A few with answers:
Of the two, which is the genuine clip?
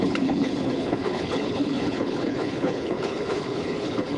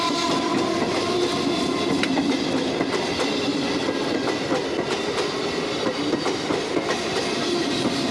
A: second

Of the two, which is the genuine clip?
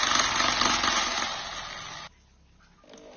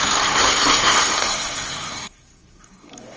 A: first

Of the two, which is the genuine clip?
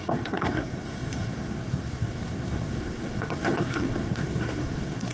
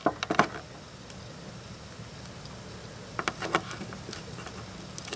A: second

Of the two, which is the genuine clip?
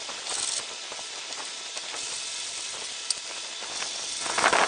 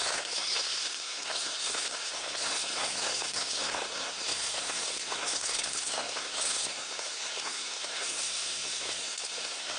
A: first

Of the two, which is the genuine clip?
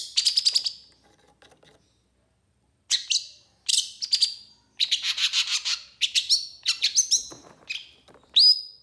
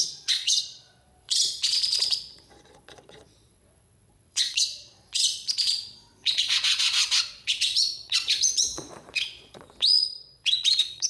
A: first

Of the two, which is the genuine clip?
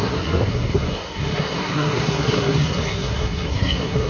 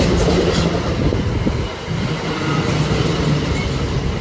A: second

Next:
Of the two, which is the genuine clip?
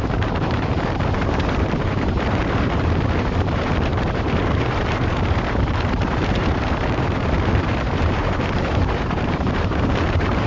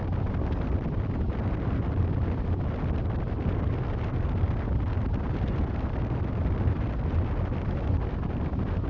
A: second